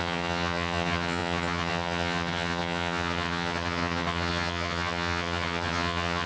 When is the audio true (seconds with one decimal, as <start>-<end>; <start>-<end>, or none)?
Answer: none

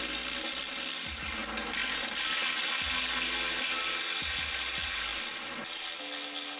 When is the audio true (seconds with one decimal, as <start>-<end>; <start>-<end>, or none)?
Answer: 0.0-6.6

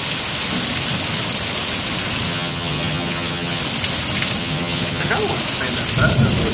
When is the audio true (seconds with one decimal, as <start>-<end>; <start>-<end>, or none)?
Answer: 0.0-2.3; 3.6-4.4; 5.1-6.5

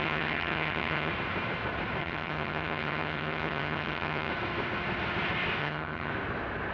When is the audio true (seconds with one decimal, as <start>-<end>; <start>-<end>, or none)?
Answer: 1.1-2.0; 4.3-5.6; 6.1-6.7

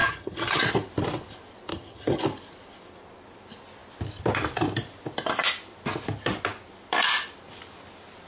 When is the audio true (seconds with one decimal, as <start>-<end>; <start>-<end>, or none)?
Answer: 0.6-1.7; 2.2-8.3